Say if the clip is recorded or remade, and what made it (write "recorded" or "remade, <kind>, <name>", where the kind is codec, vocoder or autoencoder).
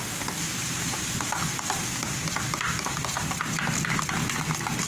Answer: recorded